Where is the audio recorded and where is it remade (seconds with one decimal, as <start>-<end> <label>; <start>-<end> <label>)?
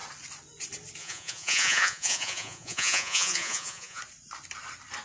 0.0-1.0 recorded; 1.0-4.0 remade; 4.0-5.0 recorded